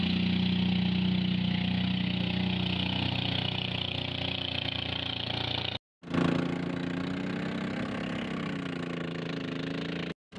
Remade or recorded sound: recorded